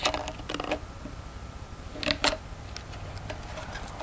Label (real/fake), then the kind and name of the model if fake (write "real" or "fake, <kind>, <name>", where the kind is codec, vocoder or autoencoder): real